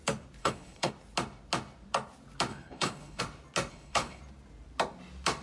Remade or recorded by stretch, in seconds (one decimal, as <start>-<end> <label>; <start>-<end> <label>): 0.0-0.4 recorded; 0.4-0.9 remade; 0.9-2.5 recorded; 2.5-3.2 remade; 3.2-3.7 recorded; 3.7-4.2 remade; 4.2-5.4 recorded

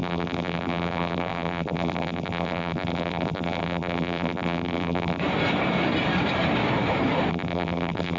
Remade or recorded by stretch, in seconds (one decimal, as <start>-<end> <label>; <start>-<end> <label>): 0.0-5.2 remade; 5.2-7.3 recorded; 7.3-8.2 remade

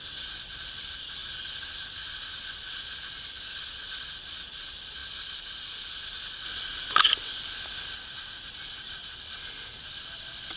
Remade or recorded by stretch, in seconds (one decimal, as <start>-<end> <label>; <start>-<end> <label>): 0.0-10.6 recorded

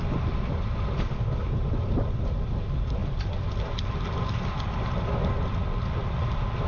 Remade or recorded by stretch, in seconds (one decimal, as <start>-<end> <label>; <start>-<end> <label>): 0.0-6.7 recorded

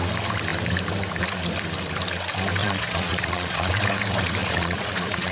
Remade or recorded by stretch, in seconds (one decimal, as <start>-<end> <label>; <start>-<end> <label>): 0.0-2.6 recorded; 2.6-3.7 remade; 3.7-4.4 recorded; 4.4-5.3 remade

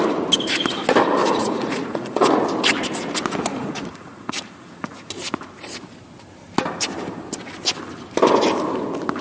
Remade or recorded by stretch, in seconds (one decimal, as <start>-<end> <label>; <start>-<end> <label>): 0.0-1.2 recorded; 1.2-2.4 remade; 2.4-3.5 recorded; 3.5-5.1 remade; 5.1-9.2 recorded

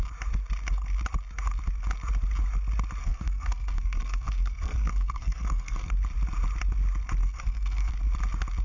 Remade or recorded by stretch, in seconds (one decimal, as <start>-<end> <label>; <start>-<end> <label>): 0.0-3.0 recorded; 3.0-5.9 remade; 5.9-7.2 recorded; 7.2-7.9 remade; 7.9-8.6 recorded